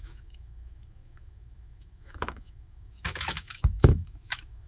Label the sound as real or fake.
fake